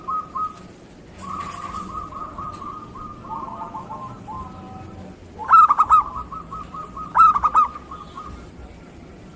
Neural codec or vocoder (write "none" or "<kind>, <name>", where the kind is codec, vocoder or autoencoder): none